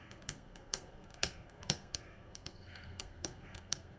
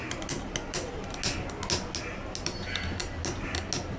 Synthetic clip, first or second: first